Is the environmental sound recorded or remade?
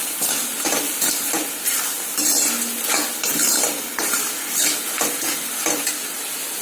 recorded